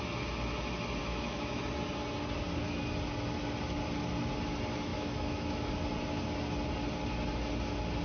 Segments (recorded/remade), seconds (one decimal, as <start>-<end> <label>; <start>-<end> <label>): 0.0-1.0 recorded; 1.0-1.6 remade; 1.6-4.9 recorded; 4.9-5.7 remade; 5.7-8.0 recorded